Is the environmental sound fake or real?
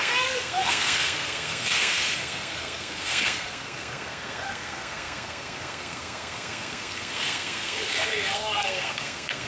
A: fake